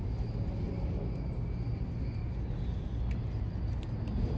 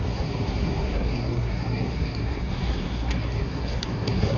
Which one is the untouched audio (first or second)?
first